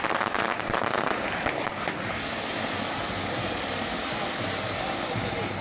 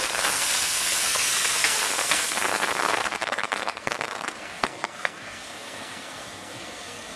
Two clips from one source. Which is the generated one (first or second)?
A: second